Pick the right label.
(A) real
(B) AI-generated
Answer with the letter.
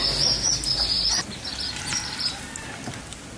A